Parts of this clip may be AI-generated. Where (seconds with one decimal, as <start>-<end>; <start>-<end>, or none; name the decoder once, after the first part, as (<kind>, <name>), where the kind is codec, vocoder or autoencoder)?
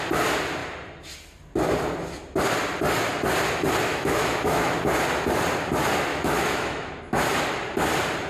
3.9-4.8 (autoencoder, DAC-VAE); 6.1-7.0